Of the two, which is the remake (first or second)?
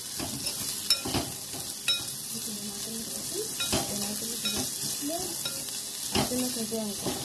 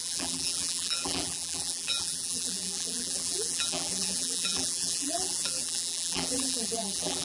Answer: second